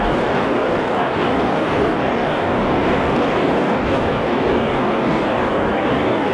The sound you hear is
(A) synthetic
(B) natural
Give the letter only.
A